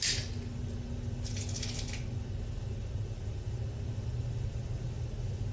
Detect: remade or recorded recorded